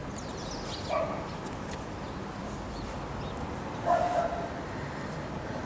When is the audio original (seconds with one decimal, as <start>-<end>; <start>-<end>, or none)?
0.0-5.7